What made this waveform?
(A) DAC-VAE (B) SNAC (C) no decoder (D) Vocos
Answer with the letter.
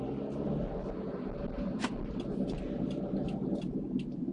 C